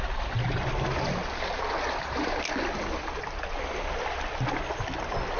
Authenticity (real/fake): real